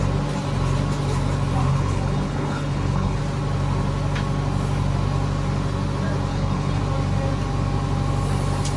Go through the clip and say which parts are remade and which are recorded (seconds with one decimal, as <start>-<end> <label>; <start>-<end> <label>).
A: 0.0-1.7 recorded; 1.7-3.2 remade; 3.2-6.3 recorded; 6.3-6.8 remade; 6.8-8.8 recorded